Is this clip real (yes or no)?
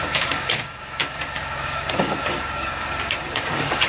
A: no